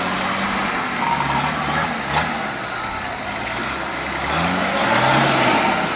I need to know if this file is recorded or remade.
recorded